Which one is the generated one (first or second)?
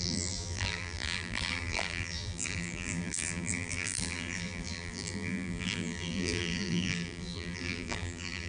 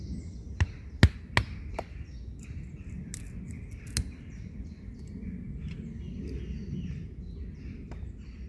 first